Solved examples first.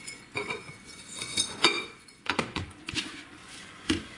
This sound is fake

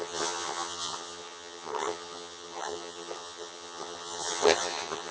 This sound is fake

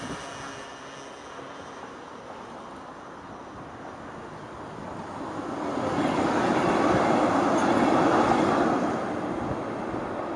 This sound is real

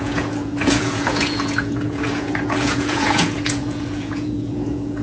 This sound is fake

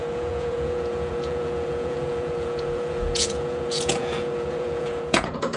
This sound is fake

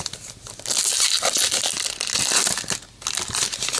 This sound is real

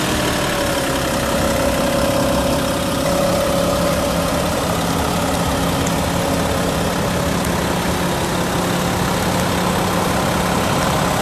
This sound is real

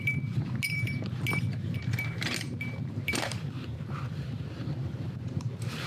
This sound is fake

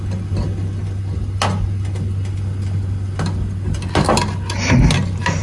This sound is real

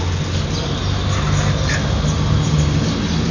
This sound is real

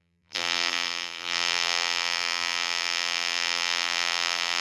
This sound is fake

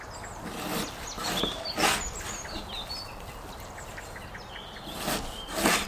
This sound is real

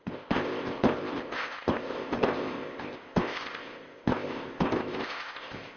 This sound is fake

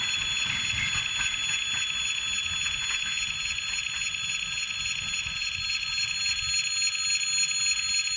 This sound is real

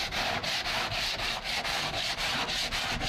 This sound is real